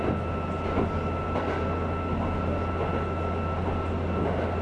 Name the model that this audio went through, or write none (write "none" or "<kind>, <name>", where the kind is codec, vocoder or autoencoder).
none